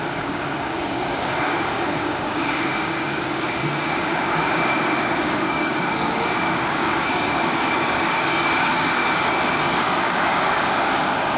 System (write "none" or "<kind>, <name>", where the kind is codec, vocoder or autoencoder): codec, DAC